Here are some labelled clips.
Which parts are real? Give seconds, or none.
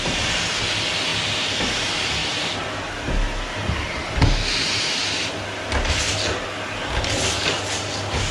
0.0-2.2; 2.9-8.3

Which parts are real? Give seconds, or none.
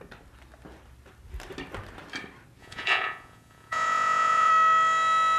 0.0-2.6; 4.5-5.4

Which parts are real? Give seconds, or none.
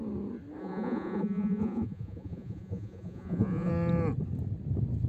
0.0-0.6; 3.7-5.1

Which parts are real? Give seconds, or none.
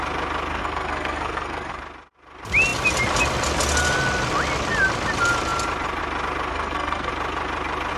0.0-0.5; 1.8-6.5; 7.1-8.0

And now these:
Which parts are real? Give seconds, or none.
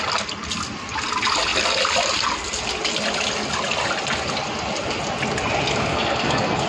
0.0-5.9